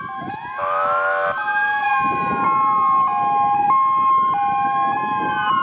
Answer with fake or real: real